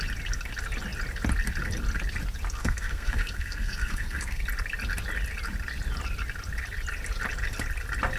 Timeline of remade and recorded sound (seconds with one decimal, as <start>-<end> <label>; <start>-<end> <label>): 0.0-2.6 recorded; 2.6-4.4 remade; 4.4-8.2 recorded